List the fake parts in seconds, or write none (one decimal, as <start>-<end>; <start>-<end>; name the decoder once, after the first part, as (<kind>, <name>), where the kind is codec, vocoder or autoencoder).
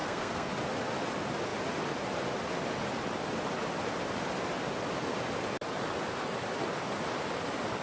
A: 0.0-0.5 (codec, SNAC)